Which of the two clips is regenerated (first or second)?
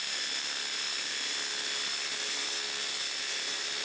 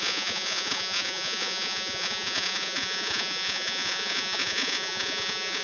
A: second